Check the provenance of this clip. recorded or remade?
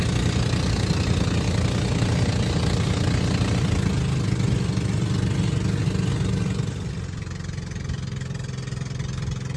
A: recorded